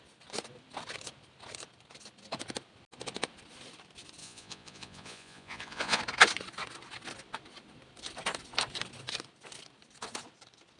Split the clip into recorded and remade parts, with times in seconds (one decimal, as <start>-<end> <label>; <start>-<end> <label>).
0.0-4.2 recorded; 4.2-6.0 remade; 6.0-10.8 recorded